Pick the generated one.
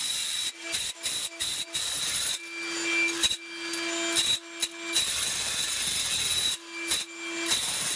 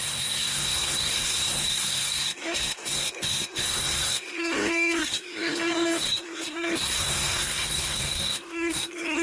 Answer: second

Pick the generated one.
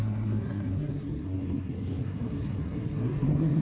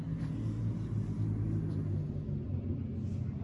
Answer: first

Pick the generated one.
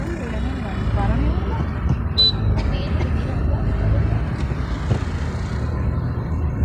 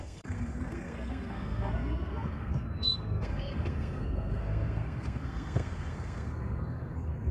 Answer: second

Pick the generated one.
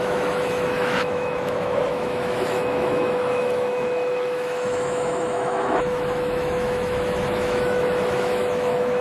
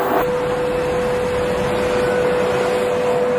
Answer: first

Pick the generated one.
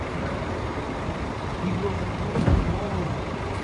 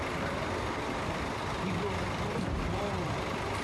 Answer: first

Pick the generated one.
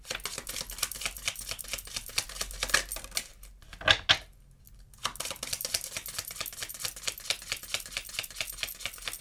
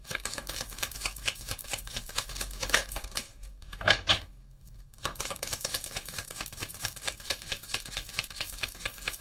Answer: second